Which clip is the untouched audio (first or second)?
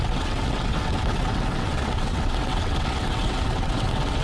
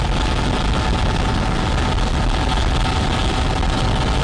second